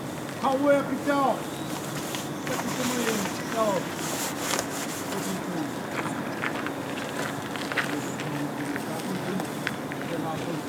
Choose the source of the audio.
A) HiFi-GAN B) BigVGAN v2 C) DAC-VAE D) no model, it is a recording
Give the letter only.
D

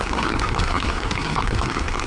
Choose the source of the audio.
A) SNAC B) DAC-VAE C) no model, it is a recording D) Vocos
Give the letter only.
A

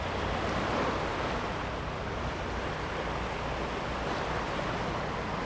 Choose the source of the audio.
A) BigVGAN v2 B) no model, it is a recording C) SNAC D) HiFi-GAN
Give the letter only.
B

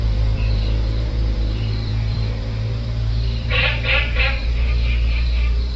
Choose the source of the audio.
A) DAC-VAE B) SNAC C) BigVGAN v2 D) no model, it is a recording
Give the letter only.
C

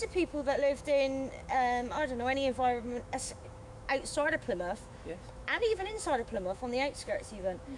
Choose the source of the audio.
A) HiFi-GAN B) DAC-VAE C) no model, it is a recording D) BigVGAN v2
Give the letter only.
B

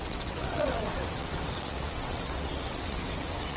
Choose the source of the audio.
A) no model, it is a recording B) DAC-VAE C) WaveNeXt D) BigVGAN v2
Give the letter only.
C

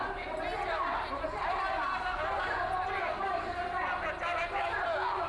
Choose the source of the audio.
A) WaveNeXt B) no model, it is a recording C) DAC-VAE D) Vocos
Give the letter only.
B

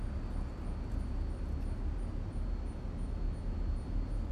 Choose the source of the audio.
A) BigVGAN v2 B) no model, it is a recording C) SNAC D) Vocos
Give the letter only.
B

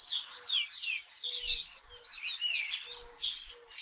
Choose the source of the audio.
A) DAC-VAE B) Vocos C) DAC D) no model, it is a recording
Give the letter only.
D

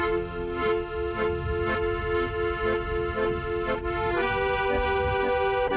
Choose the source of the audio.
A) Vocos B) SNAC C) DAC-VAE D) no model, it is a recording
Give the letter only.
D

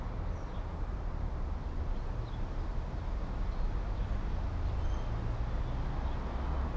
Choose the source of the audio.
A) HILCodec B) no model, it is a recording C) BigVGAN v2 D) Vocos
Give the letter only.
B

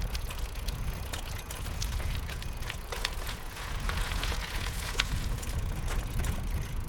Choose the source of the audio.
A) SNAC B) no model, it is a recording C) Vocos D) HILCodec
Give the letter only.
C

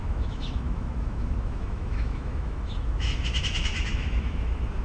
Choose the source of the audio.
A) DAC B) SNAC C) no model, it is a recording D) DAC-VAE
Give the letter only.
D